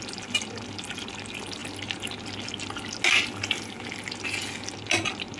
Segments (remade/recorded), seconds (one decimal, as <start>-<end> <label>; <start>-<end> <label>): 0.0-5.4 recorded